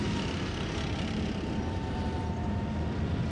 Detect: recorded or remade remade